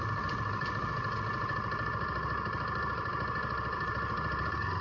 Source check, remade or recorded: recorded